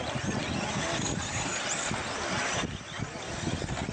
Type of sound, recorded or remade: recorded